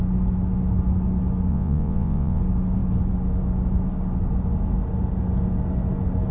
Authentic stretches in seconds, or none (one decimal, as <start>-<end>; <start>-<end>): 0.0-1.5; 2.4-6.3